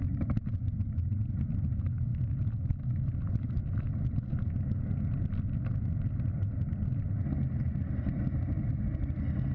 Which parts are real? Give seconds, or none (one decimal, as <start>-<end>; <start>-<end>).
0.0-9.5